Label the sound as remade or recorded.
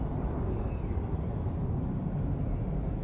recorded